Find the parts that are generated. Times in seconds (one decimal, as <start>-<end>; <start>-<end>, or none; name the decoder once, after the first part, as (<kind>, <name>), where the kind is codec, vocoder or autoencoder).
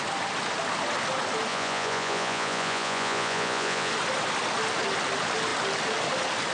1.5-3.9 (vocoder, Vocos)